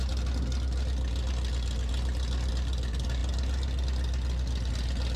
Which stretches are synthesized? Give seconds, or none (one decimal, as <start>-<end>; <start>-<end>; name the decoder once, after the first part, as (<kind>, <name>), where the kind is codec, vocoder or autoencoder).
none